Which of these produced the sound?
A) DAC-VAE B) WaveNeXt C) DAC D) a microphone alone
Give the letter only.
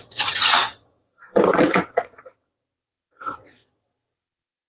B